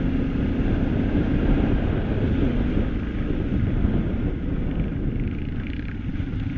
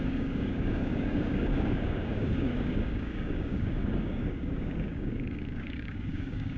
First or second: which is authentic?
first